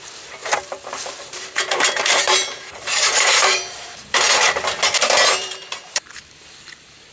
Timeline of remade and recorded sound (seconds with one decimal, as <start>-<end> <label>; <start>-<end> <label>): 0.0-0.4 recorded; 0.4-4.5 remade; 4.5-5.4 recorded; 5.4-6.1 remade; 6.1-7.1 recorded